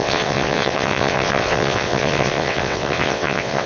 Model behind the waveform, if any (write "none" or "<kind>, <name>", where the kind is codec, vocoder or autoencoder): vocoder, WaveNeXt